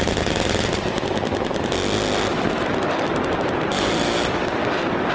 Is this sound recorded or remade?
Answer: recorded